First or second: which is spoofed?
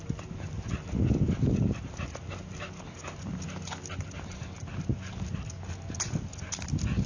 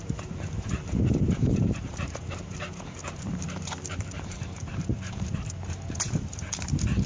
second